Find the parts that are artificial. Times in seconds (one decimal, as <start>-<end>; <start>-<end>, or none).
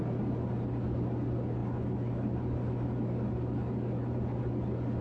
none